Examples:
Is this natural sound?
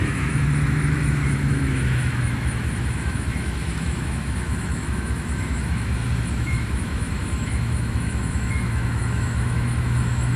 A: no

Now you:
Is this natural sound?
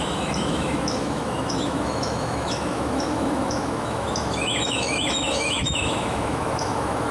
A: no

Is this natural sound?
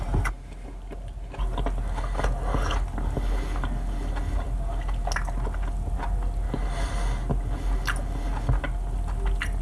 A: yes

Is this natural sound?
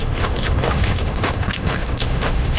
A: no